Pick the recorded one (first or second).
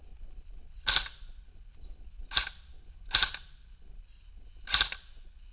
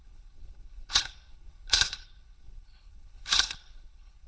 first